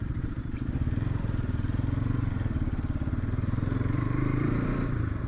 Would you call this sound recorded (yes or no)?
no